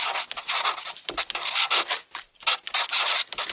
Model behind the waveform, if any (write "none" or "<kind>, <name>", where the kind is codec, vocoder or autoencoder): none